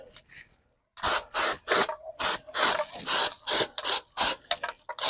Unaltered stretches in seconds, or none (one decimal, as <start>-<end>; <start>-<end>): 0.0-1.8; 2.9-5.1